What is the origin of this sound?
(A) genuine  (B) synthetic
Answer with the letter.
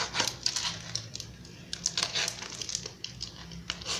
A